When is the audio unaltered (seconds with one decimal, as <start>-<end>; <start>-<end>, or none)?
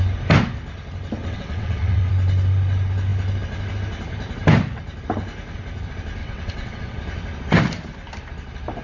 0.0-1.2; 2.1-6.2; 7.0-8.8